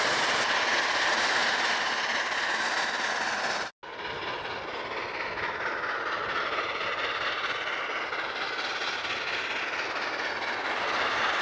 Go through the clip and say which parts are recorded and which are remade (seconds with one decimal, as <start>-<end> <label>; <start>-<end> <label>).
0.0-11.4 recorded